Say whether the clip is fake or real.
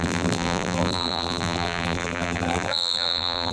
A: fake